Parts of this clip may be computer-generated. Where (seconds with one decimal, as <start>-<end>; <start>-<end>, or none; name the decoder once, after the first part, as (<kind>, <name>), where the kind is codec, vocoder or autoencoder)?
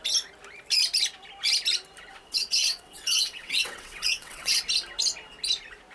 2.1-4.6 (vocoder, WaveNeXt)